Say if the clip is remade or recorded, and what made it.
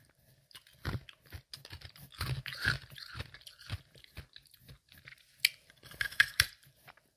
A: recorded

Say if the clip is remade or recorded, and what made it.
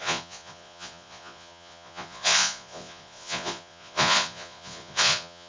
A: remade, vocoder, Vocos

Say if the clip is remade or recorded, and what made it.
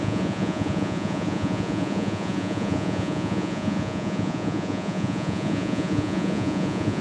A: remade, vocoder, Vocos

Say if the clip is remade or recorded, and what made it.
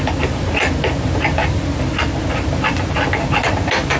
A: recorded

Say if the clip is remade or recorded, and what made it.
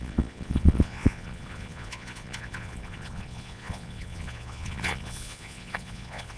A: remade, vocoder, Vocos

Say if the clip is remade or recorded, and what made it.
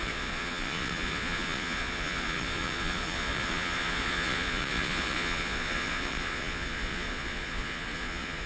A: remade, vocoder, Vocos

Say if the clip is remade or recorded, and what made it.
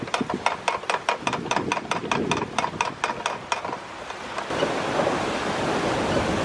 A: recorded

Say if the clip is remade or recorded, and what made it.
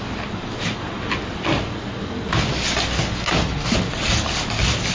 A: recorded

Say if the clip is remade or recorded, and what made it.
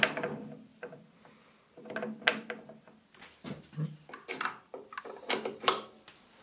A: recorded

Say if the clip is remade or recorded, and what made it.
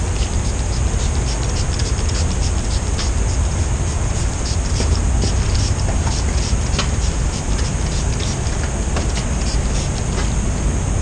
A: recorded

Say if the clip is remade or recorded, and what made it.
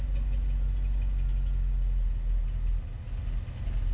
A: recorded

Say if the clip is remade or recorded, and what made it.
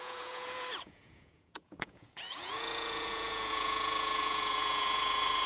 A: remade, vocoder, Vocos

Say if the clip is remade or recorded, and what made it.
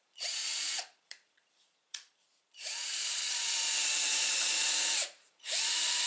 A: remade, vocoder, Vocos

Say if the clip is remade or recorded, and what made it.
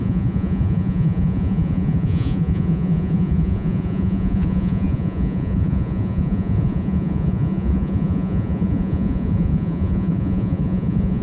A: remade, vocoder, Vocos